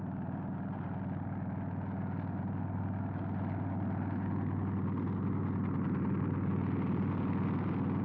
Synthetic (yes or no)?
no